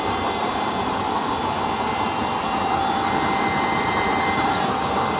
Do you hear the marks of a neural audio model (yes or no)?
yes